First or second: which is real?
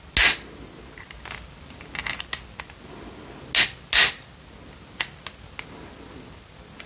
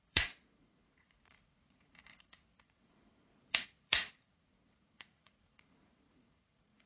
first